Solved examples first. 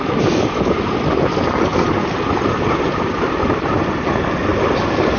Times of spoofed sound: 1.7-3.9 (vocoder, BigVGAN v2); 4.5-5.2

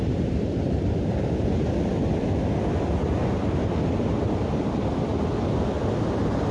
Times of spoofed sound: 0.0-1.9 (vocoder, BigVGAN v2); 3.9-5.1; 5.7-6.5